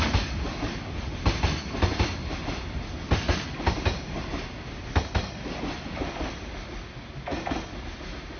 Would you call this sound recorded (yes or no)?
yes